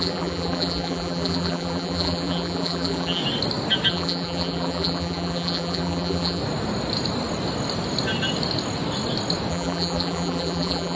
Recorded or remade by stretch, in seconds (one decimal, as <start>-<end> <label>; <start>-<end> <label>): 0.0-3.2 remade; 3.2-3.9 recorded; 3.9-6.4 remade; 6.4-9.5 recorded; 9.5-11.0 remade